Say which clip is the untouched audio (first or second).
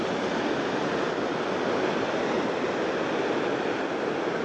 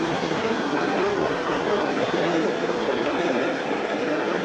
first